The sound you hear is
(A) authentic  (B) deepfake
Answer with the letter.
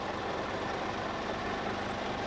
A